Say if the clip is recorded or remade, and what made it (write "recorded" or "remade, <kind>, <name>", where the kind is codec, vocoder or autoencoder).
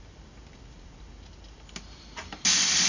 recorded